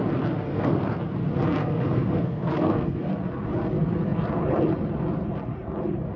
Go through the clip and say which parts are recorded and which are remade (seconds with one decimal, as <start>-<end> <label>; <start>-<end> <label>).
0.0-0.5 recorded; 0.5-1.0 remade; 1.0-1.6 recorded; 1.6-3.1 remade; 3.1-6.2 recorded